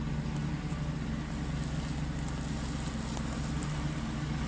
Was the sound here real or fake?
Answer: real